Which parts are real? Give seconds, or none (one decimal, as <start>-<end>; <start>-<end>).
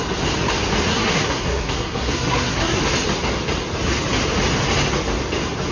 0.0-0.9; 2.8-5.7